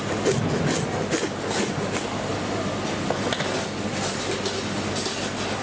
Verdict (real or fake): real